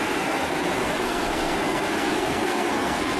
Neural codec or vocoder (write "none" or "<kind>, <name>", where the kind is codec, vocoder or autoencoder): codec, SNAC